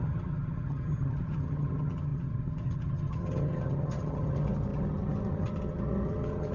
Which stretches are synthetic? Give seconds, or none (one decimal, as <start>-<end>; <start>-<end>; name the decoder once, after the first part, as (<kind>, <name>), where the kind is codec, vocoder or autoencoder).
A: 0.0-6.5 (vocoder, HiFi-GAN)